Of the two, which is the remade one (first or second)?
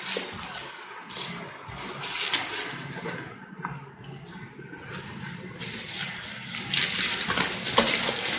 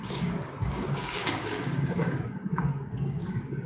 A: second